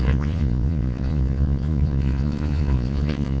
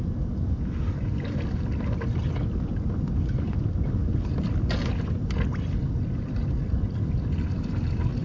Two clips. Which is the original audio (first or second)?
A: second